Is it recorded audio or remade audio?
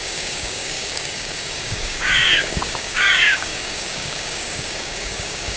remade